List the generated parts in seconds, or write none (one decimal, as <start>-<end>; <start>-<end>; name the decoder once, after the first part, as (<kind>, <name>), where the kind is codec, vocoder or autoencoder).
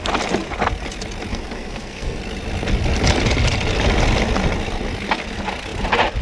1.3-2.2 (codec, SNAC)